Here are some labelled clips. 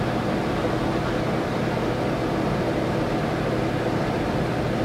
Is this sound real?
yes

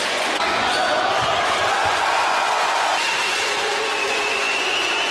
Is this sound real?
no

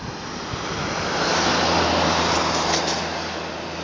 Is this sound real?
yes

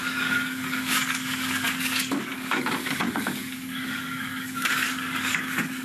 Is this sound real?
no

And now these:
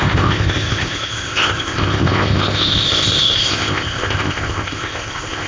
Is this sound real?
no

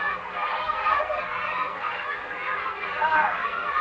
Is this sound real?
no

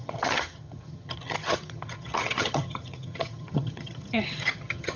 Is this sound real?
no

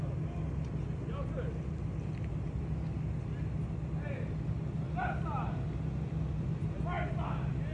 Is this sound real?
yes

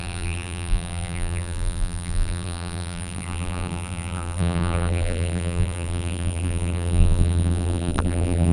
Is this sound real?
no